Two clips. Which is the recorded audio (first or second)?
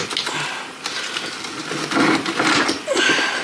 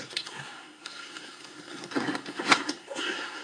first